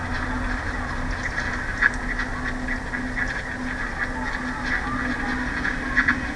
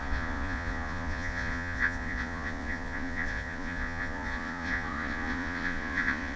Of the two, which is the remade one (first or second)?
second